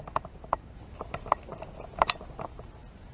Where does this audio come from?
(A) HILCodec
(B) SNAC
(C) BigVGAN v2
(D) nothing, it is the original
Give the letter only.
C